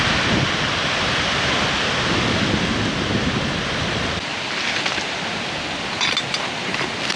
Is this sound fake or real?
real